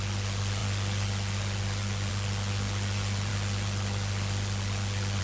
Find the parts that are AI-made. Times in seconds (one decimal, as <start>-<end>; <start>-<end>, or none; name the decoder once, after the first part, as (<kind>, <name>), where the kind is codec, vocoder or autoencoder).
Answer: none